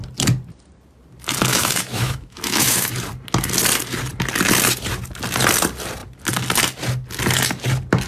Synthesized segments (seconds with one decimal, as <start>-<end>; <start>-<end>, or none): 1.5-2.9